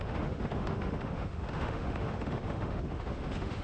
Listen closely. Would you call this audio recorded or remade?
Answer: remade